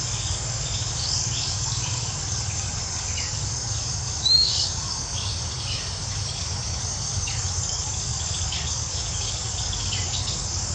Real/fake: fake